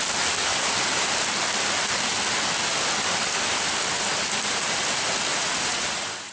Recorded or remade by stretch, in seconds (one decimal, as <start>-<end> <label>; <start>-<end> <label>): 0.0-5.3 recorded; 5.3-6.3 remade

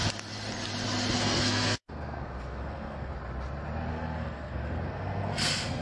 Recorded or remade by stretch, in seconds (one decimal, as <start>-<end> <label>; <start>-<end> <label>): 0.0-1.2 recorded; 1.2-3.1 remade; 3.1-3.9 recorded; 3.9-5.8 remade

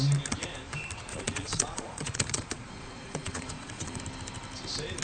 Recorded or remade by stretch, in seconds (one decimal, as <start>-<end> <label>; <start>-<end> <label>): 0.0-1.1 recorded; 1.1-4.0 remade; 4.0-5.0 recorded